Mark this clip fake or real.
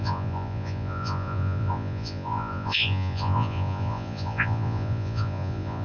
fake